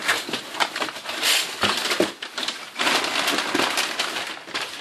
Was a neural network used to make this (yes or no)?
no